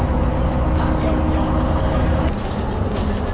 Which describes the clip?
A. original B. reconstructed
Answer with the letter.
A